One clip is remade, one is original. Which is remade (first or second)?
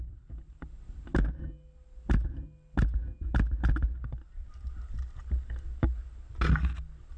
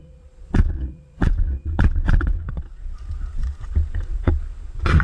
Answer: second